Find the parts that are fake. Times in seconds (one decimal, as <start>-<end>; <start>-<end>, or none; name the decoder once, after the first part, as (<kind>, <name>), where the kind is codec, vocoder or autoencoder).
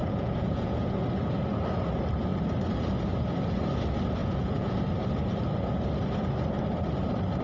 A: 0.0-1.0 (vocoder, Vocos); 4.2-4.8